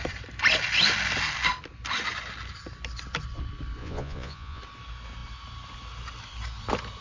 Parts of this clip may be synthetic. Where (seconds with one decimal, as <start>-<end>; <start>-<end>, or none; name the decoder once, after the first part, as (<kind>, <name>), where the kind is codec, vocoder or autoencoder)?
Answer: 3.8-4.6 (vocoder, Vocos)